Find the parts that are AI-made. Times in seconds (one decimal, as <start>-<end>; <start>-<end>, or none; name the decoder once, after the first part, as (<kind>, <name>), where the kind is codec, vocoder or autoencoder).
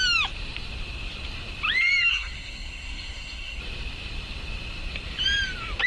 2.1-3.6 (codec, SNAC)